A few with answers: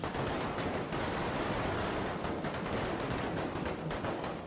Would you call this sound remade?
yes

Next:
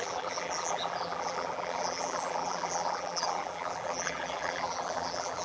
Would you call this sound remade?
yes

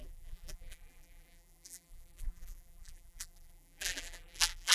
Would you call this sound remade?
yes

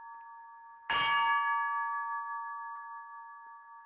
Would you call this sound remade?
no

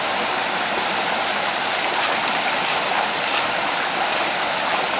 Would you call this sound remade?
no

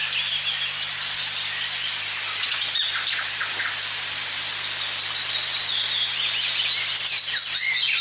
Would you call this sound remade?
yes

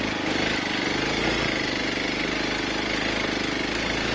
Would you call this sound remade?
no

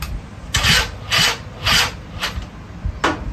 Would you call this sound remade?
no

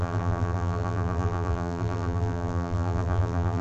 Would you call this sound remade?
yes